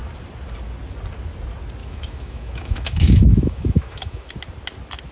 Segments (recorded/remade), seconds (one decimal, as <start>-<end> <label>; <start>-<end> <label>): 0.0-1.8 recorded; 1.8-4.3 remade; 4.3-5.1 recorded